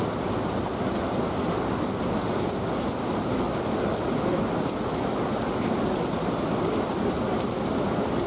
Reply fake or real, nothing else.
fake